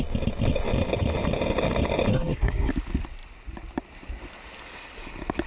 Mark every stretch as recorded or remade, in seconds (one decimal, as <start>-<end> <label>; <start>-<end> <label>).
0.0-2.1 recorded; 2.1-2.7 remade; 2.7-5.5 recorded